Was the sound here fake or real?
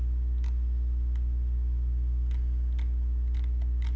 real